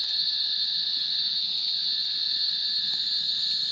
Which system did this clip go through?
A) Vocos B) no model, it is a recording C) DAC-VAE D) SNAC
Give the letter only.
B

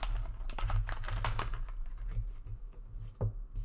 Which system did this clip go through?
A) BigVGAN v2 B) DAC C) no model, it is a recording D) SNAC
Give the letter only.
C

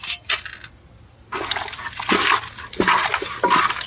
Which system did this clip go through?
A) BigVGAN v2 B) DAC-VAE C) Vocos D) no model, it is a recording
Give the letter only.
D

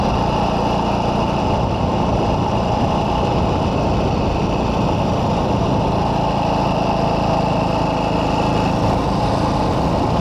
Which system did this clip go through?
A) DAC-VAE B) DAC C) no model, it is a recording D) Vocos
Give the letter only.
C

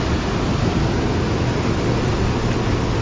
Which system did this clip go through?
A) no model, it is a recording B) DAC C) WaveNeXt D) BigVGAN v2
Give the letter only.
A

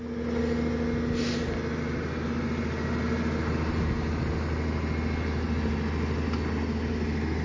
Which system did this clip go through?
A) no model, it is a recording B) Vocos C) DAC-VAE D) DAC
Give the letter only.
A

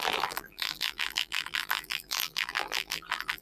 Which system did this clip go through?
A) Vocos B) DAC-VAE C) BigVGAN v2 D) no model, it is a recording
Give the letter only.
C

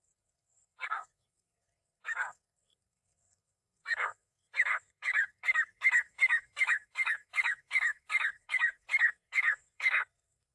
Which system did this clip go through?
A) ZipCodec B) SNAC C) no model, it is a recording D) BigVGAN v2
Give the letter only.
B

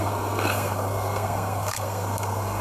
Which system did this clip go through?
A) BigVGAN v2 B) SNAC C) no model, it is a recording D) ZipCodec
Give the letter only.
B